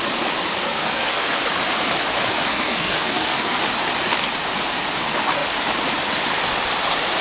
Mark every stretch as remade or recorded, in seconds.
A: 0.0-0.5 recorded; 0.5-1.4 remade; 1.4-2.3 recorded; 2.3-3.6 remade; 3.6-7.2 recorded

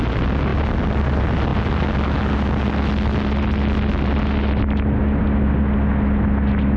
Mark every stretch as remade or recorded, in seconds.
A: 0.0-6.8 recorded

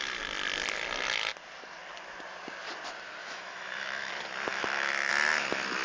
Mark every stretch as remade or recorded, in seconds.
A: 0.0-3.2 recorded; 3.2-4.1 remade; 4.1-4.5 recorded; 4.5-5.1 remade; 5.1-5.8 recorded

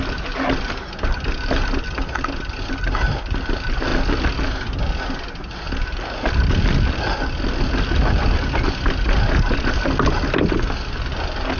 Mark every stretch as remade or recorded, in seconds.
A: 0.0-11.6 recorded